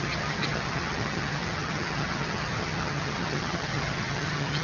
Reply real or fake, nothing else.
fake